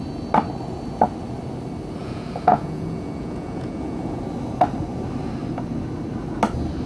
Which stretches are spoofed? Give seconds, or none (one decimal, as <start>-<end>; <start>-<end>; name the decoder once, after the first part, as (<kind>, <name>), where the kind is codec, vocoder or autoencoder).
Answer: 2.0-4.2 (vocoder, Vocos)